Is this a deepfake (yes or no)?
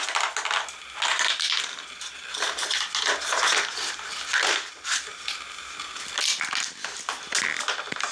no